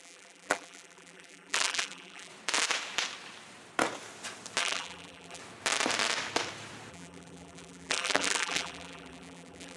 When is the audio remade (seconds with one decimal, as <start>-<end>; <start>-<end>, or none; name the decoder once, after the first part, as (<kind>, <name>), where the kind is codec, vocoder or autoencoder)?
0.0-2.3 (vocoder, BigVGAN v2); 4.6-5.4; 6.9-9.8